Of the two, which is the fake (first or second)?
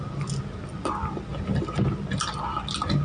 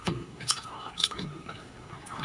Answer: second